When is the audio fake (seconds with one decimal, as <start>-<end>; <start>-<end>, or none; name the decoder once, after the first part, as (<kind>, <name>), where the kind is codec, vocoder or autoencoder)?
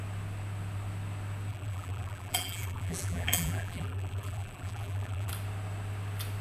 1.5-5.3 (vocoder, BigVGAN v2)